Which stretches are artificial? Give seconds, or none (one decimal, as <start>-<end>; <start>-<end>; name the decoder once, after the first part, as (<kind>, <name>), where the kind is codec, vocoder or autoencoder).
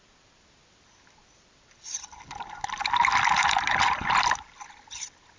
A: none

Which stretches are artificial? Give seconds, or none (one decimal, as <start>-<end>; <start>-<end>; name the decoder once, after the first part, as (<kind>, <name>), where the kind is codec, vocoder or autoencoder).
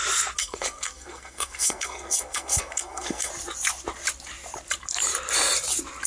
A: 0.4-3.3 (codec, SNAC)